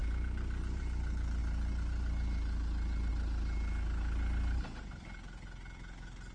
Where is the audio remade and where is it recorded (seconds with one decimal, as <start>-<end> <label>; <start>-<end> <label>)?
0.0-6.3 recorded